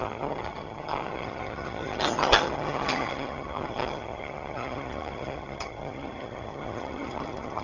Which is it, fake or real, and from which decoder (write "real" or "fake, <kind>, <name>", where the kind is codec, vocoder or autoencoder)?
fake, vocoder, HiFi-GAN